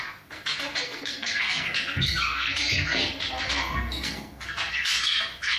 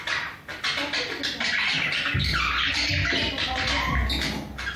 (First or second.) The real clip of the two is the second